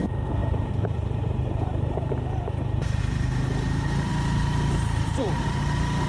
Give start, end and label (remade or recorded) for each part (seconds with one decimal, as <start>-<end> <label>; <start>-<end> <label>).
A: 0.0-0.4 recorded; 0.4-3.0 remade; 3.0-4.1 recorded; 4.1-5.6 remade; 5.6-6.1 recorded